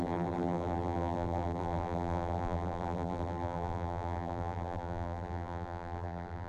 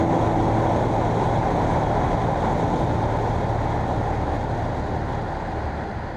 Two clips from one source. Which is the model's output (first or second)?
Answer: first